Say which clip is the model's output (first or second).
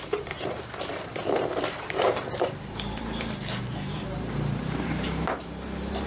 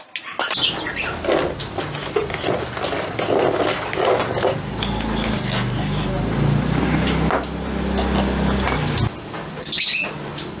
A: first